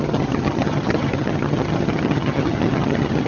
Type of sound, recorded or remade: remade